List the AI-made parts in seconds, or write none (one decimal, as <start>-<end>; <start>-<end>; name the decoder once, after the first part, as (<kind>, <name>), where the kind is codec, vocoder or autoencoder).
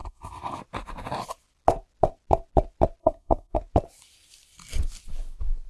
0.0-0.6 (codec, SNAC); 3.0-3.6